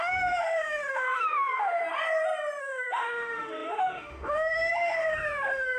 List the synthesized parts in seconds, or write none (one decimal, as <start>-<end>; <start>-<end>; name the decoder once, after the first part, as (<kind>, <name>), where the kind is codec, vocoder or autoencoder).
0.0-1.8 (autoencoder, DAC-VAE); 2.6-5.8